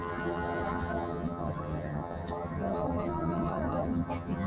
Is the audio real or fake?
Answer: fake